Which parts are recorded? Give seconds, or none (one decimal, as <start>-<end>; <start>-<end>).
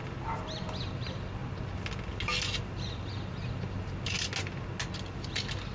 0.0-5.7